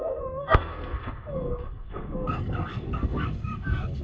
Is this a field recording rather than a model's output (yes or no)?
no